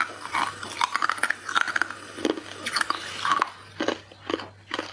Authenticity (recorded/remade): recorded